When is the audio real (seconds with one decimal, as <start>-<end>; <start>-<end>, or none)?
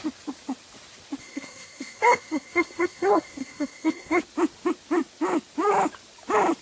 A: 0.0-1.2; 4.2-6.6